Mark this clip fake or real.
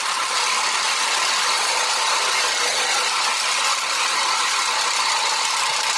real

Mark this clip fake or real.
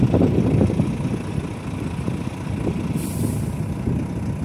real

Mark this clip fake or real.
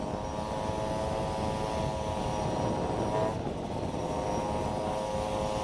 real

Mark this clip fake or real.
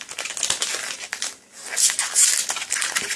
real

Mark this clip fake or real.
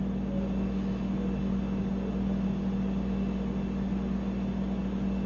real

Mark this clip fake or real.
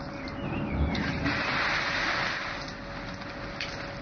real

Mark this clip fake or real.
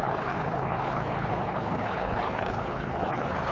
fake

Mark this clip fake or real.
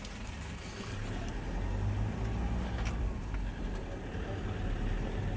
real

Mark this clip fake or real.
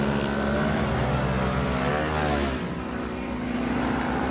real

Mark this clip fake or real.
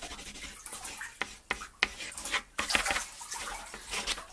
real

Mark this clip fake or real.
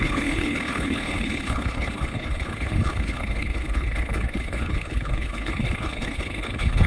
fake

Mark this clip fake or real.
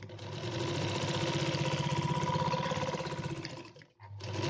real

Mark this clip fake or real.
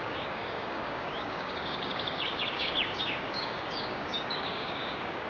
fake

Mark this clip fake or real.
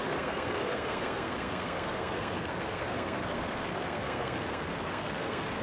fake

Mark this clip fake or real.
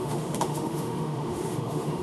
fake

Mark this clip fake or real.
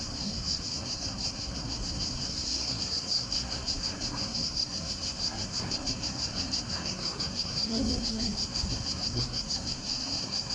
fake